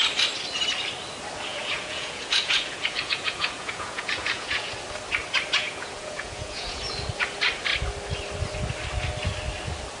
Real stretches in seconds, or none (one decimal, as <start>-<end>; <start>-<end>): 0.0-1.5; 4.7-5.6; 6.8-10.0